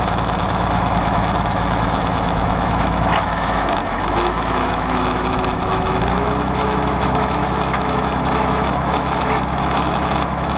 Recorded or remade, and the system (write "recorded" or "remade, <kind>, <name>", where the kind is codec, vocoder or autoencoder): remade, autoencoder, DAC-VAE